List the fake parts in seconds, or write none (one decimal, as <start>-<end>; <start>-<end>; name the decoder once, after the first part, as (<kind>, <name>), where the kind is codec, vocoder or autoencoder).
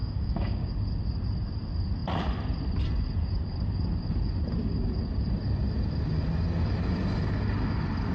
0.0-0.7 (codec, DAC)